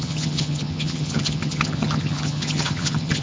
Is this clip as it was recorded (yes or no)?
no